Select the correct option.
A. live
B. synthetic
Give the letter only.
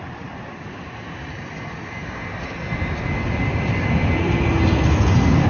A